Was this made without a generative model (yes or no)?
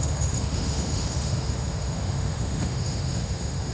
no